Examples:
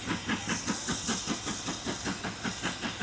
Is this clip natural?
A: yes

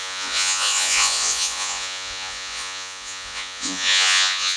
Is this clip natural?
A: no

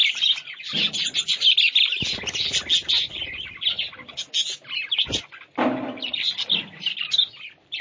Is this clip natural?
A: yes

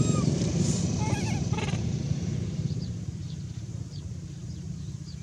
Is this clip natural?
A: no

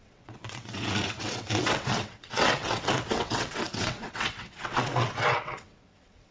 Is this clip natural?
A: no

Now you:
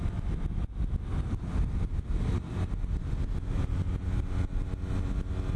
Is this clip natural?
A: yes